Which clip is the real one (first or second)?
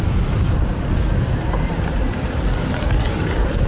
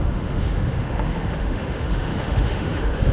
first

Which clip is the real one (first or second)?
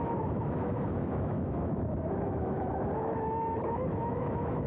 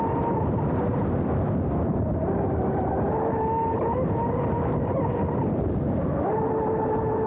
second